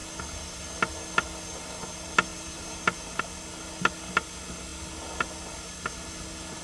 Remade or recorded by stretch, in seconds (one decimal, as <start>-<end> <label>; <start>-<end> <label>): 0.0-2.3 recorded; 2.3-3.2 remade; 3.2-6.6 recorded